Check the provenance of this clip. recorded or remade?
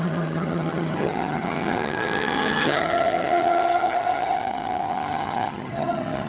remade